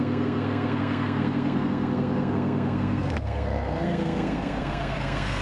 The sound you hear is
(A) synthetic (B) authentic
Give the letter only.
A